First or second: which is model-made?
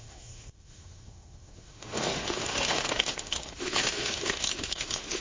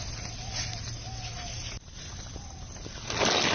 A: first